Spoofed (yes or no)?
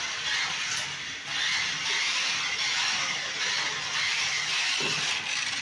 no